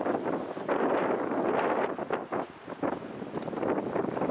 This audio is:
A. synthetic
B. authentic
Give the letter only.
B